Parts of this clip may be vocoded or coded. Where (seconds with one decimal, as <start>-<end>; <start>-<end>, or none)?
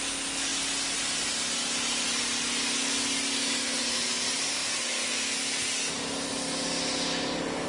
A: none